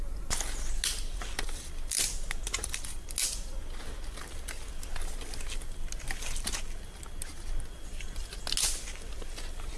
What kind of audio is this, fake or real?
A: real